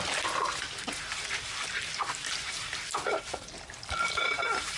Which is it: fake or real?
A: real